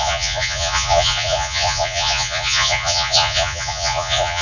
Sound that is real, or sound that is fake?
fake